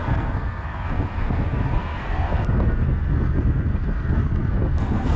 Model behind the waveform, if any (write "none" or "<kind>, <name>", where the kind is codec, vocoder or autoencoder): codec, SNAC